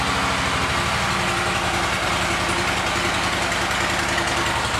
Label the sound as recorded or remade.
recorded